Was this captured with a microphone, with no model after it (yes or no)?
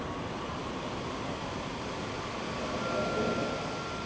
yes